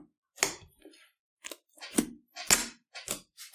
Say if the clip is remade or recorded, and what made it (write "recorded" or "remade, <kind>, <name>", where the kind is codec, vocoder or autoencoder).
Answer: recorded